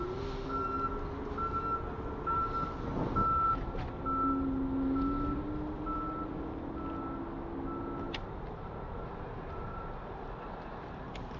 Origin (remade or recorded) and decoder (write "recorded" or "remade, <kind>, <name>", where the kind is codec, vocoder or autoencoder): recorded